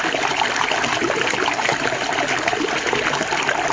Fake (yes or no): yes